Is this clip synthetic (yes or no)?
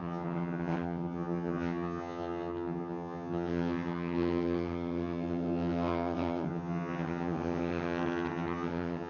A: yes